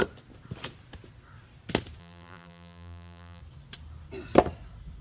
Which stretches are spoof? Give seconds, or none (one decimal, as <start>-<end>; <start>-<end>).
2.0-3.4